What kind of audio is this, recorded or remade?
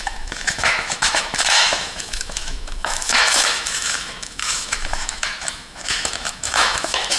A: remade